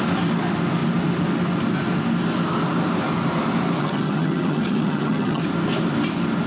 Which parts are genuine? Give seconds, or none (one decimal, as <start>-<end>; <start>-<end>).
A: 0.0-3.8; 5.4-6.5